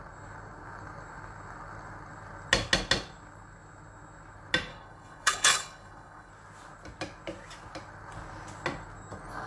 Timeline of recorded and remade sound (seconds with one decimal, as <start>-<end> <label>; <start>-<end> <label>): 0.0-4.7 recorded; 4.7-6.3 remade; 6.3-9.5 recorded